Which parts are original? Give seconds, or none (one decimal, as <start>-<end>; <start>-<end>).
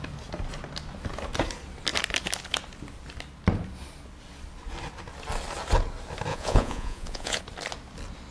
0.0-6.3; 7.4-8.3